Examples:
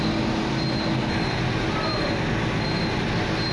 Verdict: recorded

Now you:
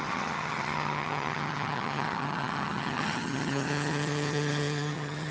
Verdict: remade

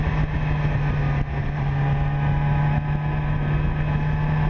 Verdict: recorded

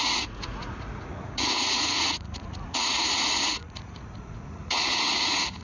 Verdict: remade